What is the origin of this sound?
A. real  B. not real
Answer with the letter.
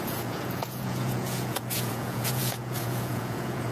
B